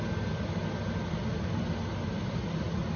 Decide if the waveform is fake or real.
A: real